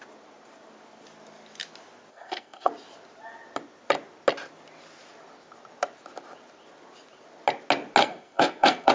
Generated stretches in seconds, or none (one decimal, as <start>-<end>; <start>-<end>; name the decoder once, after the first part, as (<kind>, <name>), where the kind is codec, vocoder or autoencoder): 2.1-2.7 (codec, SNAC); 8.0-8.9

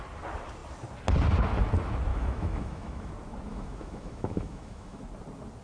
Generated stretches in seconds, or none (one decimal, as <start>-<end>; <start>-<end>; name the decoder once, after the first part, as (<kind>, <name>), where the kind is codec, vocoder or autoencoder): 2.1-3.1 (autoencoder, DAC-VAE); 3.5-5.0

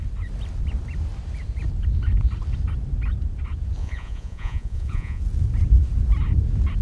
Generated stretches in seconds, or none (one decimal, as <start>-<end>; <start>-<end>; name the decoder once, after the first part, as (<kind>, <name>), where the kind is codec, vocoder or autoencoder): 3.8-5.2 (vocoder, Vocos)

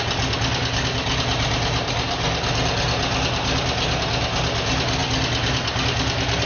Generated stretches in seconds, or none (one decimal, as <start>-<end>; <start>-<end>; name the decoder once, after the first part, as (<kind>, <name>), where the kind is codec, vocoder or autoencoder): none

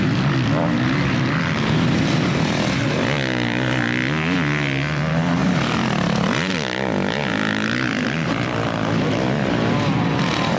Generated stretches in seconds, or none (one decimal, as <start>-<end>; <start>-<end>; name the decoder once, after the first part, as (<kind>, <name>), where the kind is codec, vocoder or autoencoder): none

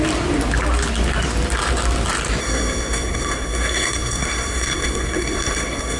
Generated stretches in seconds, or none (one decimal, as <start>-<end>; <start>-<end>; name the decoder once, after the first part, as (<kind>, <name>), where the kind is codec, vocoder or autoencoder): 2.4-6.0 (codec, SNAC)

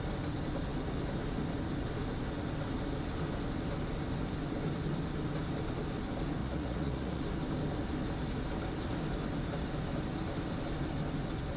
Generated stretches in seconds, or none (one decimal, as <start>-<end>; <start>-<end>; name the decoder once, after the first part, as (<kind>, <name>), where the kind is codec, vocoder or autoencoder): 6.4-7.2 (vocoder, Vocos)